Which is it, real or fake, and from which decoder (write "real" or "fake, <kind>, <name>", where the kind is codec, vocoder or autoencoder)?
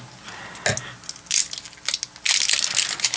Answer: real